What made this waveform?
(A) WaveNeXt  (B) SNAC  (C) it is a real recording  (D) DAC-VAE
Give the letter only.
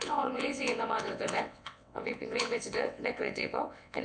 A